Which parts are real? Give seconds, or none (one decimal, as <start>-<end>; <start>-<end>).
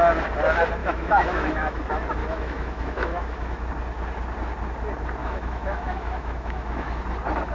0.0-0.8; 1.8-2.2; 3.7-5.2; 7.0-7.5